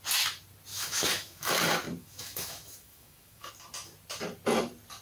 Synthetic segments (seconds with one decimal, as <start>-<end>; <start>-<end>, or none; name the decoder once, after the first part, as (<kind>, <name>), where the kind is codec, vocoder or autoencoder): 0.7-1.6 (autoencoder, DAC-VAE); 2.0-3.5